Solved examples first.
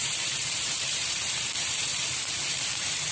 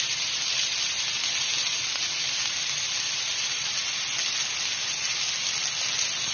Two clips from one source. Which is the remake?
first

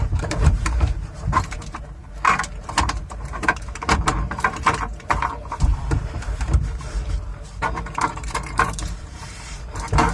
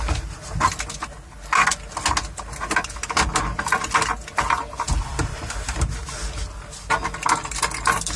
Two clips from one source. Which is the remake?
first